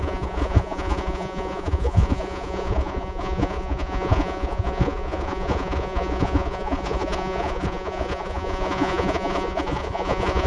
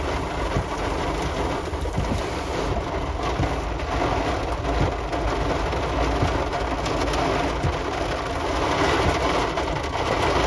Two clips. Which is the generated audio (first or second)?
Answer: first